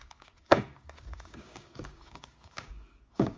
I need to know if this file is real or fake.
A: fake